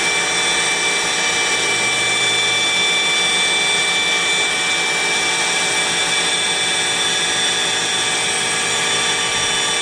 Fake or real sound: real